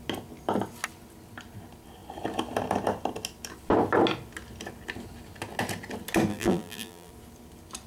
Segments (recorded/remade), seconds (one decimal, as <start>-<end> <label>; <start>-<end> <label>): 0.0-6.3 recorded; 6.3-7.1 remade; 7.1-7.9 recorded